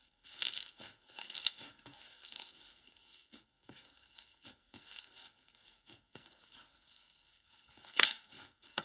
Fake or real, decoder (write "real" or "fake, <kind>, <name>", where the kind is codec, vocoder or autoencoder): fake, codec, SNAC